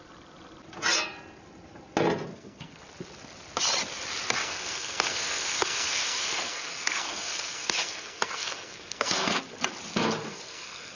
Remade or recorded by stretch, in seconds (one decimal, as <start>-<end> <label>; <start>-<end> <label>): 0.0-2.3 recorded; 2.3-2.8 remade; 2.8-4.4 recorded; 4.4-9.4 remade; 9.4-10.3 recorded; 10.3-11.0 remade